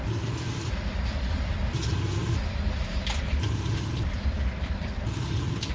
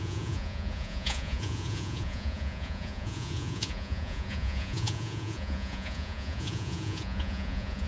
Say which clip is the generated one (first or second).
second